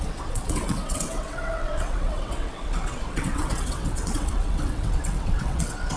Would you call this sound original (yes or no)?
no